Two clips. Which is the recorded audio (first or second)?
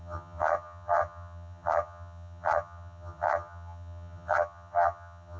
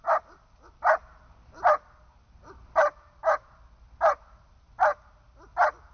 second